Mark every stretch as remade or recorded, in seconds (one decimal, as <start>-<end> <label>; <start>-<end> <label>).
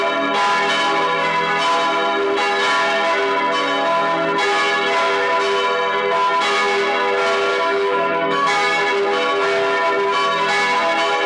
0.0-7.5 recorded; 7.5-8.8 remade; 8.8-11.3 recorded